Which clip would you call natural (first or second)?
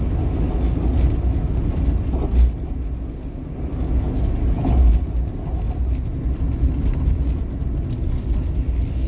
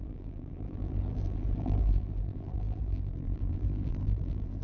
first